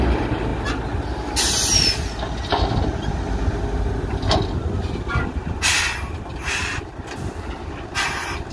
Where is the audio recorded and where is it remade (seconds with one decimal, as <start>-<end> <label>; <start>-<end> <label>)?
0.0-8.5 recorded